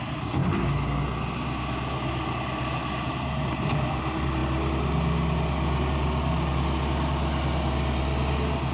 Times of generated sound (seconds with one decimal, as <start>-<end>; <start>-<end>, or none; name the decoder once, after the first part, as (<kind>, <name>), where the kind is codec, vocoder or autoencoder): none

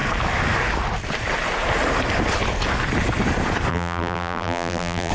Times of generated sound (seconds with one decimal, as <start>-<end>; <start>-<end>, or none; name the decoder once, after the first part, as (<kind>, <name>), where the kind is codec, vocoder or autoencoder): 3.7-5.1 (vocoder, BigVGAN v2)

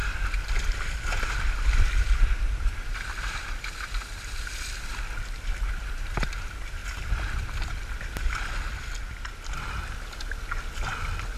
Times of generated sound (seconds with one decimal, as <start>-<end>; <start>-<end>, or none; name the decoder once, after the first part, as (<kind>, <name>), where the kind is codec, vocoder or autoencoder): 0.0-4.9 (vocoder, BigVGAN v2); 6.8-8.4

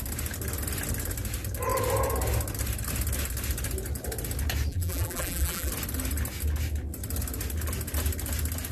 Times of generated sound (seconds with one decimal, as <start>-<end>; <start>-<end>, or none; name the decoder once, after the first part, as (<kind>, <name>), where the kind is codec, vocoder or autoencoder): 4.7-5.7 (vocoder, BigVGAN v2)

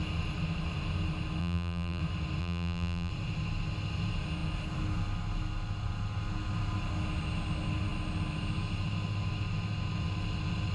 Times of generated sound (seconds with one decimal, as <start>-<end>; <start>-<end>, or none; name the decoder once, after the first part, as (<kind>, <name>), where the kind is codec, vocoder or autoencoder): 1.4-2.0 (vocoder, BigVGAN v2); 2.4-3.1